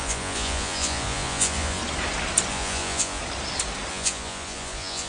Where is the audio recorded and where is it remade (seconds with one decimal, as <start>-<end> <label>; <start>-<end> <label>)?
0.0-1.8 remade; 1.8-2.5 recorded; 2.5-3.2 remade; 3.2-3.9 recorded; 3.9-5.1 remade